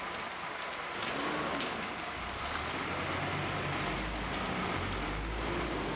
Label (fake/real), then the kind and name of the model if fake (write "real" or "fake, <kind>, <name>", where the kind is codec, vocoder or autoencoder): real